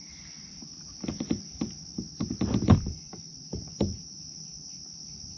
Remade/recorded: recorded